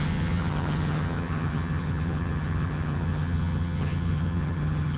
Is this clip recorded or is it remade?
remade